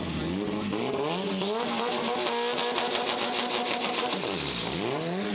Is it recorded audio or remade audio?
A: recorded